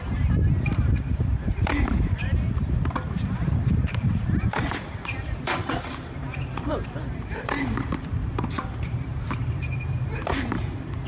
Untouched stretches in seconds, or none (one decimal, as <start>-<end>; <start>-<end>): none